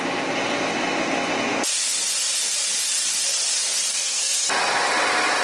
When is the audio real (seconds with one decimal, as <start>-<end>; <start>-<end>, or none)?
0.0-3.9; 4.5-5.4